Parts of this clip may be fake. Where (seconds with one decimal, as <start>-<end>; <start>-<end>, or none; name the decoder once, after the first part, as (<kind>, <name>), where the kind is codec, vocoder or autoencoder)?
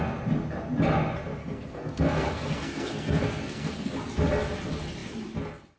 1.4-3.9 (codec, SNAC)